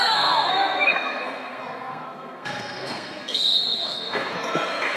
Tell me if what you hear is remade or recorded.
remade